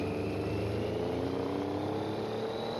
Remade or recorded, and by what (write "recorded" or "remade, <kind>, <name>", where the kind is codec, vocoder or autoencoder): recorded